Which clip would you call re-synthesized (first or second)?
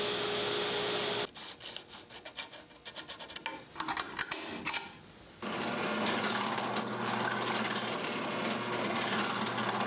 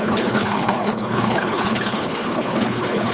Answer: second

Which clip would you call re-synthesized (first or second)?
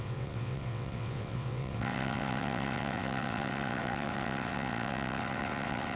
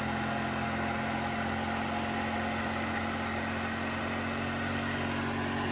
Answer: first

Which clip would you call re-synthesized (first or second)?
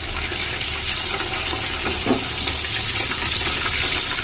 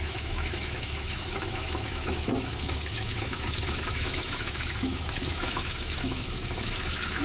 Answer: second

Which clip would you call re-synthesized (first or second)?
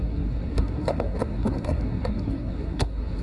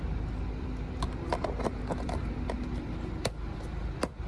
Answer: first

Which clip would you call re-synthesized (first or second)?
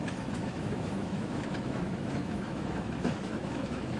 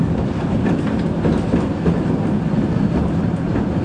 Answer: first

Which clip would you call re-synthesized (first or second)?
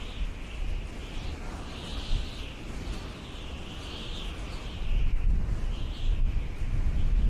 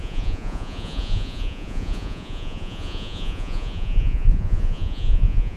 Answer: second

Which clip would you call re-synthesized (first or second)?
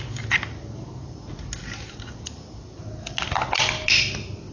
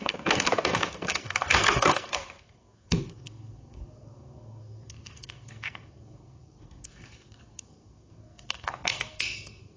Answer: second